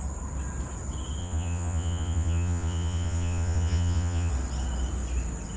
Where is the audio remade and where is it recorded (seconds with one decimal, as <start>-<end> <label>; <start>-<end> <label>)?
0.0-1.2 recorded; 1.2-4.3 remade; 4.3-5.6 recorded